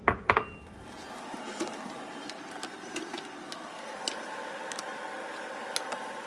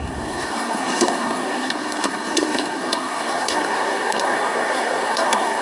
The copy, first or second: second